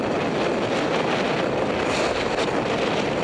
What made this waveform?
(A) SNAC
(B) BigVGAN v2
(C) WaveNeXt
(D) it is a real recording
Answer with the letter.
D